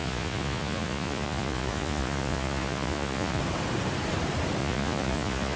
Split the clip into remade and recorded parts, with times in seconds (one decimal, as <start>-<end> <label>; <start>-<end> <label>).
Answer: 0.0-3.4 remade; 3.4-4.6 recorded; 4.6-5.6 remade